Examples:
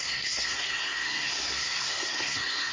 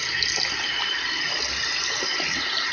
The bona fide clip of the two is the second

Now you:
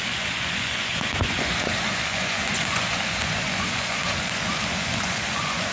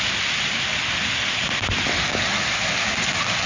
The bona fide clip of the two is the second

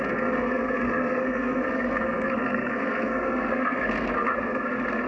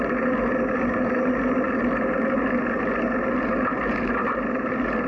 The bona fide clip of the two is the second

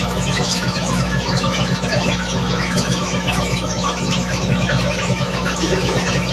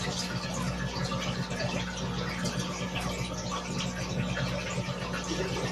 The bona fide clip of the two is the second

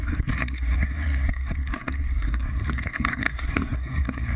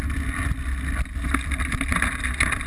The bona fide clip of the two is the second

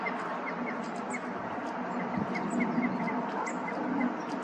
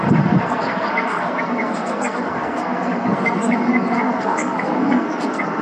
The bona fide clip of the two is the first